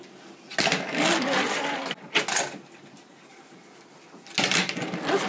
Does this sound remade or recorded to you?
recorded